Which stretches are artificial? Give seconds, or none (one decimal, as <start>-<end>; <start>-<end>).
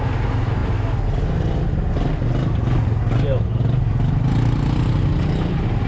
none